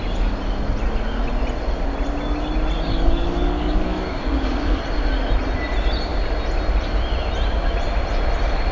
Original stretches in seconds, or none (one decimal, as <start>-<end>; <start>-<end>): 0.0-2.9; 4.8-8.7